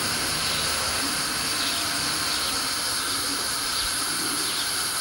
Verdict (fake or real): fake